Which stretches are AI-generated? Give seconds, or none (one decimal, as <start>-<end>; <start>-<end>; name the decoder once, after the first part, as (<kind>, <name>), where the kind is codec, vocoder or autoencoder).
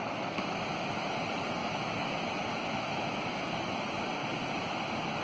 0.0-1.2 (autoencoder, DAC-VAE); 1.6-3.6; 4.2-4.8